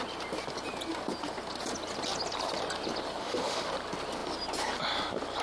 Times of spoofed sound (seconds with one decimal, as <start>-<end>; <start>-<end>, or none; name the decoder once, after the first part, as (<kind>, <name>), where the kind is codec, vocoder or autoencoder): 3.2-3.7 (autoencoder, DAC-VAE)